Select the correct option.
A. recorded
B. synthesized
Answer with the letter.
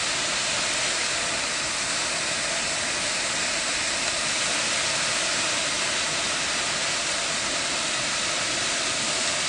A